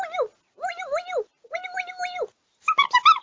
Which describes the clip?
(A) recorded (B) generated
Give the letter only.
A